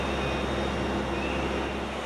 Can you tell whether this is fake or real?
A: real